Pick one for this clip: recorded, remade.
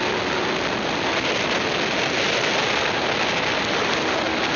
recorded